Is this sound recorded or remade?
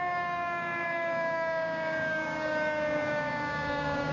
remade